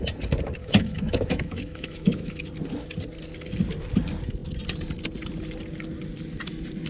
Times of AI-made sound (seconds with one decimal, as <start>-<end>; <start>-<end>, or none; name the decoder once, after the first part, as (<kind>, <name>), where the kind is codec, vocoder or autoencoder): 0.6-2.4 (autoencoder, DAC-VAE)